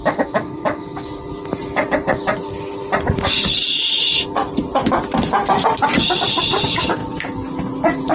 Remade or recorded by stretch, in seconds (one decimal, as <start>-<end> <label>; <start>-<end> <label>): 0.0-7.0 remade; 7.0-8.1 recorded